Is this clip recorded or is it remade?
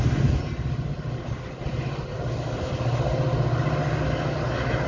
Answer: recorded